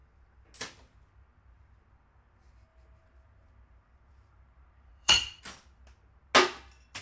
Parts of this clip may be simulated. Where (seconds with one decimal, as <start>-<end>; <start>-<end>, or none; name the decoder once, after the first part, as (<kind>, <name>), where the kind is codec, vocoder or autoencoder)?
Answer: 2.7-5.4 (vocoder, BigVGAN v2)